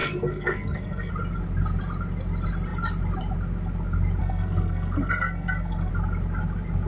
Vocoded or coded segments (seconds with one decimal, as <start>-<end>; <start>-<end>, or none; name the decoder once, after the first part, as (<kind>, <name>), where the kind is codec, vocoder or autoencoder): 0.0-1.1 (codec, SNAC); 4.2-5.9

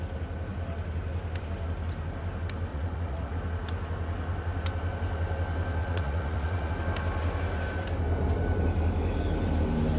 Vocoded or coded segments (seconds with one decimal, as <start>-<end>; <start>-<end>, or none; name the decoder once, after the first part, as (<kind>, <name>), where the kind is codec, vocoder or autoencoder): 2.7-3.3 (vocoder, Vocos); 5.8-6.7

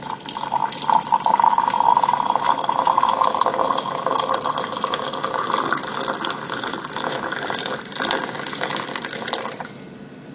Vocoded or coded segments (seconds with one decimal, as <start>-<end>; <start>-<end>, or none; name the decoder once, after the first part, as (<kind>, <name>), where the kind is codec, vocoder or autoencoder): none

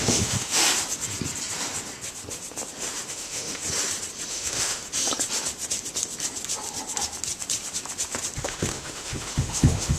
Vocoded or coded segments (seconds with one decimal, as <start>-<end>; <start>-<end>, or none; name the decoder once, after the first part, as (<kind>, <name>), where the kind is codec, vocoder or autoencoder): 0.0-0.6 (autoencoder, DAC-VAE); 3.1-3.6; 4.3-4.8; 8.4-10.0

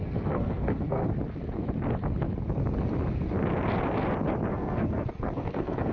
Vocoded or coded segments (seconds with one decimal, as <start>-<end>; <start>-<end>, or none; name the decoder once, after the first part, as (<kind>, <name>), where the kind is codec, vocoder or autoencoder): 0.0-1.0 (codec, SNAC); 4.5-5.9

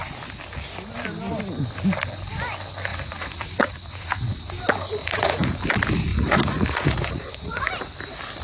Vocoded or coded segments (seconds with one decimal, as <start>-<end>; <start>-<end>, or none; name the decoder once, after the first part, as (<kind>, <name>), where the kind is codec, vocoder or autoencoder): 2.9-4.5 (vocoder, Vocos); 5.0-5.6; 6.1-7.7